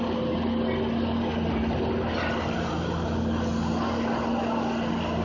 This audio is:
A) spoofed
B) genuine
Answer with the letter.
B